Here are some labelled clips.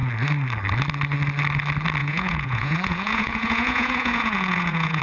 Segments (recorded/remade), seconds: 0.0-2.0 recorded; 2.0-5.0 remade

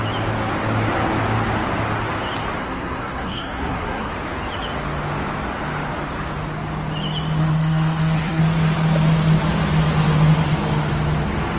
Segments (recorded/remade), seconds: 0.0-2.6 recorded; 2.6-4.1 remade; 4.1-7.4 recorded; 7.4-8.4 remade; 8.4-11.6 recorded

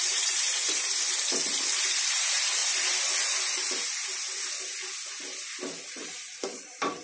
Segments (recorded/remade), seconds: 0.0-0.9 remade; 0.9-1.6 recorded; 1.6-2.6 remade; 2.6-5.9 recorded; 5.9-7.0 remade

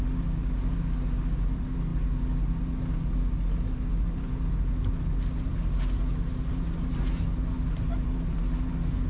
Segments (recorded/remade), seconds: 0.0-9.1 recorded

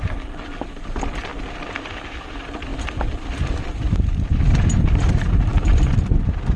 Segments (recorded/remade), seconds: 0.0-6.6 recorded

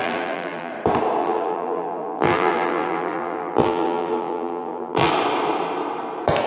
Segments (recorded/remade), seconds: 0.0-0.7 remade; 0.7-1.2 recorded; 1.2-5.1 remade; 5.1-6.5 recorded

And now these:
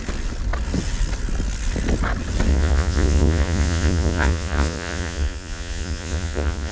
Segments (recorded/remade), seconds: 0.0-2.5 recorded; 2.5-6.7 remade